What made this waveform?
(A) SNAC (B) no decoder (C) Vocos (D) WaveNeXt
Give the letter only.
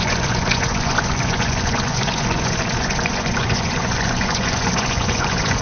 C